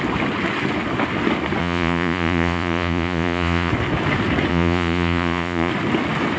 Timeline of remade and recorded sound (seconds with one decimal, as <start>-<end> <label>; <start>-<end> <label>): 0.0-1.6 recorded; 1.6-3.7 remade; 3.7-4.5 recorded; 4.5-5.7 remade; 5.7-6.4 recorded